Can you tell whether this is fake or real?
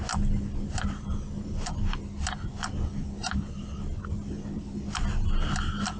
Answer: real